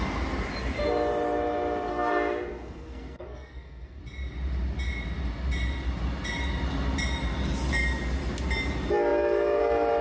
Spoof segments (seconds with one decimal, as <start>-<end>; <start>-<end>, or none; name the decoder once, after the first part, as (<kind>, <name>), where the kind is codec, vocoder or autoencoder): 1.9-4.0 (codec, SNAC)